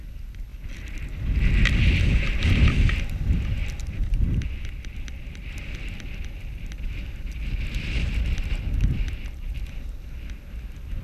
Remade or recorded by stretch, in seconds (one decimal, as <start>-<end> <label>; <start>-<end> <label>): 0.0-3.6 recorded; 3.6-5.9 remade; 5.9-11.0 recorded